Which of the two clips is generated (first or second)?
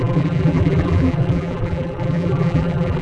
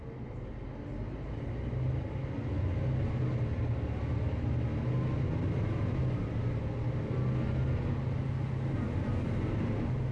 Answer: first